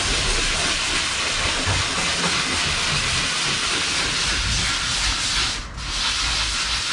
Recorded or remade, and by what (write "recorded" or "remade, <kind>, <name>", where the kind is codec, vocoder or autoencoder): recorded